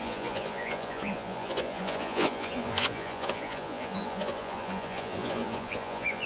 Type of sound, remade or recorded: remade